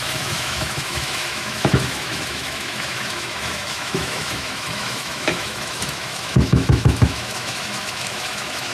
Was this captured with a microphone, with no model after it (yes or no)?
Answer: no